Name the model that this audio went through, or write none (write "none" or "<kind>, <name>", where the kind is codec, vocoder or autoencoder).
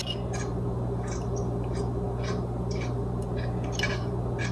none